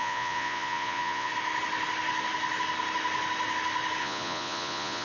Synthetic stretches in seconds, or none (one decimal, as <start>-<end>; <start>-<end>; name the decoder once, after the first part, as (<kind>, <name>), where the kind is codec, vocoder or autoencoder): 0.0-1.3 (vocoder, Vocos); 4.0-5.0